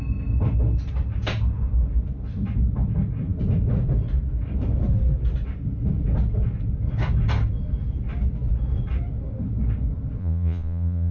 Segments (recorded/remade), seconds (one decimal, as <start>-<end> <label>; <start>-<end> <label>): 0.0-10.2 recorded; 10.2-11.1 remade